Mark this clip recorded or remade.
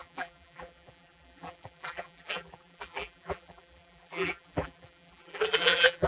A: remade